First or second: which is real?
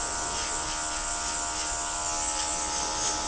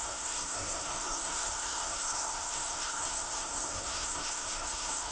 first